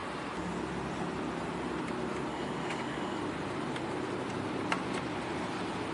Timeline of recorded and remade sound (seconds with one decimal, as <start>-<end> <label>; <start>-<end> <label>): 0.0-2.3 recorded; 2.3-3.2 remade; 3.2-5.9 recorded